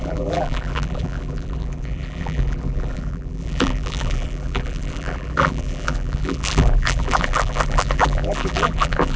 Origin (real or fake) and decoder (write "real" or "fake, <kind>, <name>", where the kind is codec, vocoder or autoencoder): fake, vocoder, BigVGAN v2